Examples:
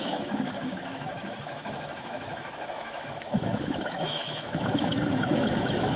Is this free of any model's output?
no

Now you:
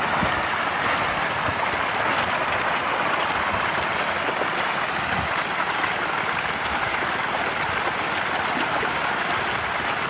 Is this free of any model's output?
yes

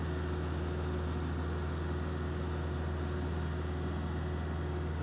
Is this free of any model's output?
yes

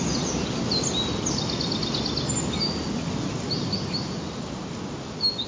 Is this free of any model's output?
yes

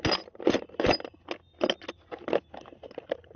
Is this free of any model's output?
yes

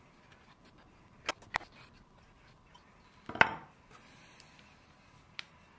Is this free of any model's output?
yes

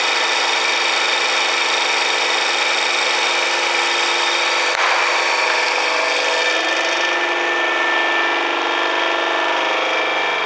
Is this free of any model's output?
yes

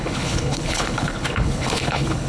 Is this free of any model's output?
no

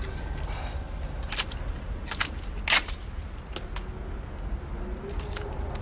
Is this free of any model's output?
yes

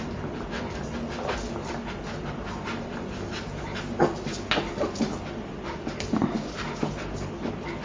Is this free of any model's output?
yes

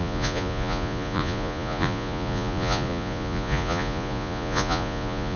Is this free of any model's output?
no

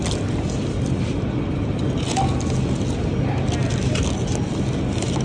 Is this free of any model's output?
yes